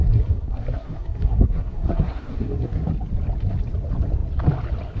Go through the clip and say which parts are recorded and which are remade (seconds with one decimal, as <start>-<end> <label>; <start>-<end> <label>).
0.0-2.9 remade; 2.9-5.0 recorded

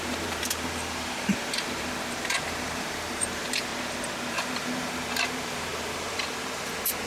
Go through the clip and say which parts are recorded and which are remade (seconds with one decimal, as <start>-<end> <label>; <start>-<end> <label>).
0.0-3.7 remade; 3.7-4.3 recorded; 4.3-7.1 remade

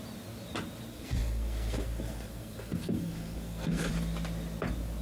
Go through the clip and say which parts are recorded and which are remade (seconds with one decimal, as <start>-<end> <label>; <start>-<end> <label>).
0.0-0.9 recorded; 0.9-3.9 remade; 3.9-5.0 recorded

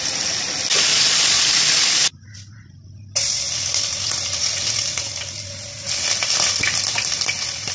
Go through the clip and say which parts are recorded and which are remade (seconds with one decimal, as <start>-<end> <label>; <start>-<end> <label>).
0.0-0.9 recorded; 0.9-1.4 remade; 1.4-7.7 recorded

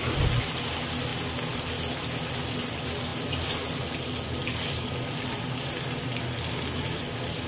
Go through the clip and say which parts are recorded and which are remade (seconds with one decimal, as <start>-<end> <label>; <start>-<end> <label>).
0.0-7.5 recorded